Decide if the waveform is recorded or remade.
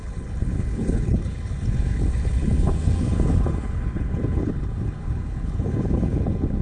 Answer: remade